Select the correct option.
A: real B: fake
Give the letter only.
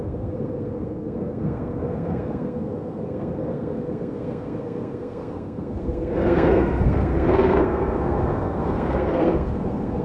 B